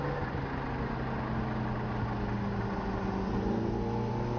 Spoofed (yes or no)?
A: no